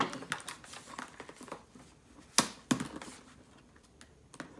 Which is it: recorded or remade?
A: recorded